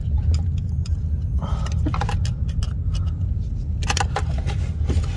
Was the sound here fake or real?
real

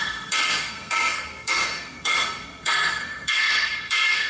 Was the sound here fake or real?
fake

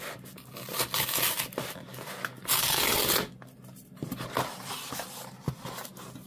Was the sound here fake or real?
real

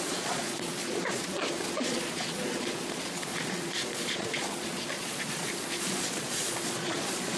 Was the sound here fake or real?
fake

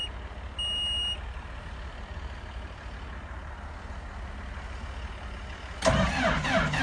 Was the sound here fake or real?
real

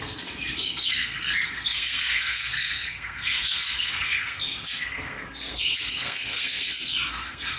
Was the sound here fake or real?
fake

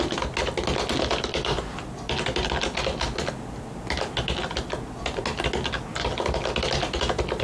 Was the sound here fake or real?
real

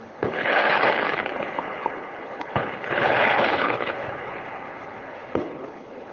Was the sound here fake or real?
fake